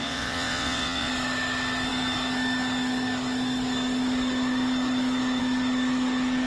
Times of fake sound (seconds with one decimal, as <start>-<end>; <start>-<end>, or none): 0.0-1.1